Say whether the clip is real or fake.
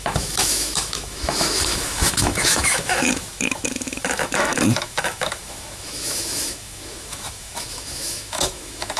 fake